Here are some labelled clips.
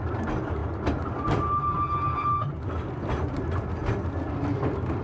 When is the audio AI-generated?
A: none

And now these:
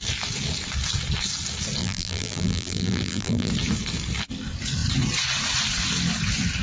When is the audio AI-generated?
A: 1.8-3.5 (vocoder, BigVGAN v2)

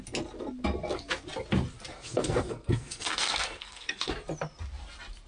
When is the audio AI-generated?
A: 1.9-4.1 (codec, SNAC)

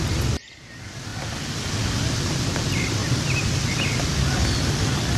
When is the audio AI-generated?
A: none

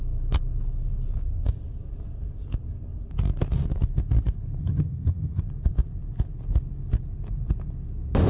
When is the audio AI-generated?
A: 4.6-5.4 (vocoder, HiFi-GAN)

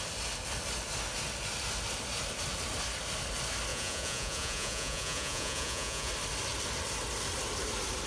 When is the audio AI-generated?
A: 3.7-6.1 (vocoder, Vocos)

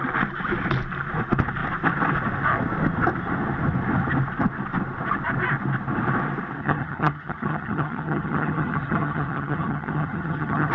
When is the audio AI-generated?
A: 6.6-10.7 (vocoder, HiFi-GAN)

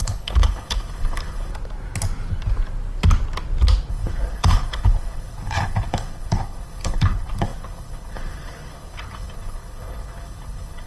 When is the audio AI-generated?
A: 0.0-1.5 (codec, HILCodec); 3.9-10.9